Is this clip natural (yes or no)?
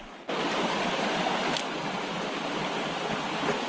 yes